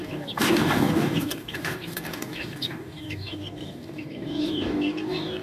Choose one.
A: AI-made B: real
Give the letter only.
A